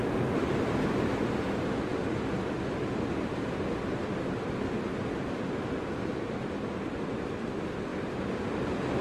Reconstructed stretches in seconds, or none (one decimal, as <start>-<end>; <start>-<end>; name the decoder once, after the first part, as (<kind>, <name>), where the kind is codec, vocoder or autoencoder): none

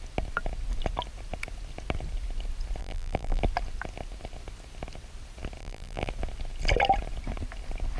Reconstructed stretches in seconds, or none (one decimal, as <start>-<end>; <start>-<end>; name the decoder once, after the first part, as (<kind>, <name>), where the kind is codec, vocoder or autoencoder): 2.8-3.4 (vocoder, BigVGAN v2); 5.6-6.1

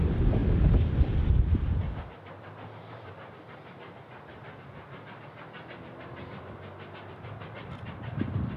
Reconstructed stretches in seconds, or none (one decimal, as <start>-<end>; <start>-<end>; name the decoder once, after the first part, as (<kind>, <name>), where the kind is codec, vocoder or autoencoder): 0.0-4.4 (vocoder, BigVGAN v2); 7.1-8.6

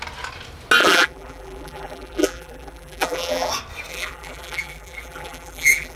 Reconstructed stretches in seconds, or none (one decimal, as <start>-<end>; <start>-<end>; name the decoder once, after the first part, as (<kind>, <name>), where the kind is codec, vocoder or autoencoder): 0.8-3.5 (vocoder, BigVGAN v2); 3.9-6.0

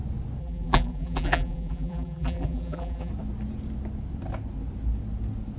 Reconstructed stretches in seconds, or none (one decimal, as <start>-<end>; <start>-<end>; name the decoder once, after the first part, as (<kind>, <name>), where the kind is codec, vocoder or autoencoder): 0.4-3.1 (vocoder, BigVGAN v2)

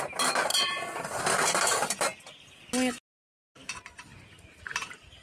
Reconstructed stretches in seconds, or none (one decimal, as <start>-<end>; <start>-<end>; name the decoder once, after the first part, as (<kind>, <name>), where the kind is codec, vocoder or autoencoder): 0.5-1.2 (vocoder, BigVGAN v2); 4.1-4.8